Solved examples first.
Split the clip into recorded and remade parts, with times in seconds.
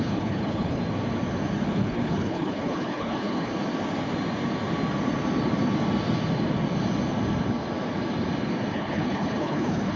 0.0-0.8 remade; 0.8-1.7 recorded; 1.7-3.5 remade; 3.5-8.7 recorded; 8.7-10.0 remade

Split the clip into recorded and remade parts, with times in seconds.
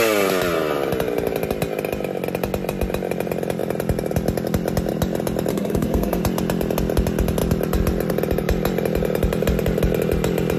0.0-5.5 recorded; 5.5-6.2 remade; 6.2-10.6 recorded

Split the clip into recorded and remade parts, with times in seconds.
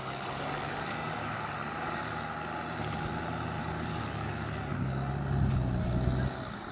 0.0-1.4 remade; 1.4-3.6 recorded; 3.6-5.1 remade; 5.1-6.7 recorded